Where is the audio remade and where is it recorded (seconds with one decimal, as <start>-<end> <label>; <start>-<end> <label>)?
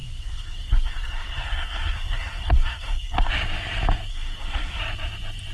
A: 0.0-3.3 remade; 3.3-4.1 recorded; 4.1-4.8 remade; 4.8-5.5 recorded